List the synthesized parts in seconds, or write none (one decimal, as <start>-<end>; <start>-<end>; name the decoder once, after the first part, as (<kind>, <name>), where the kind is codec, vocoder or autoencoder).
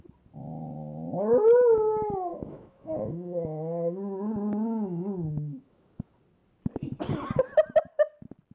2.3-5.9 (autoencoder, DAC-VAE)